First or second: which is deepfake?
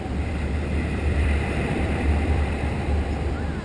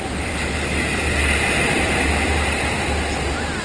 first